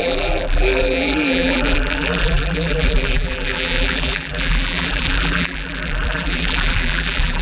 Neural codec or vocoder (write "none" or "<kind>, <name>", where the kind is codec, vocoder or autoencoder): vocoder, BigVGAN v2